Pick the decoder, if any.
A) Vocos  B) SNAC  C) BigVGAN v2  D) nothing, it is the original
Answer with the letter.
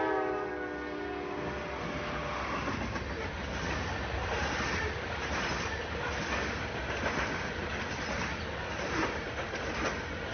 D